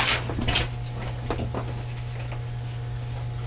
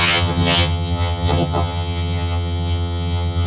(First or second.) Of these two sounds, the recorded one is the first